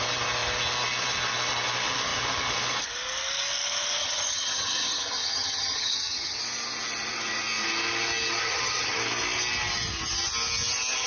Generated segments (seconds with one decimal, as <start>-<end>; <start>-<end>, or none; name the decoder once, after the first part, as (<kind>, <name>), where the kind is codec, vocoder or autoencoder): 4.0-6.4 (vocoder, HiFi-GAN); 8.4-9.0